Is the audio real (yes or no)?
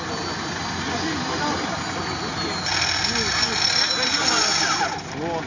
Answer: yes